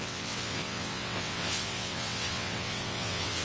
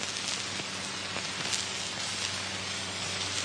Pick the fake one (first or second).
first